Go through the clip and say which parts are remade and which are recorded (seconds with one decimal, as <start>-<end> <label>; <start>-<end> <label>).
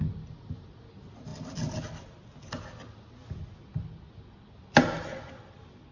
0.0-5.9 recorded